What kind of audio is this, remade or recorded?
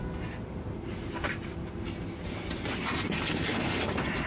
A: recorded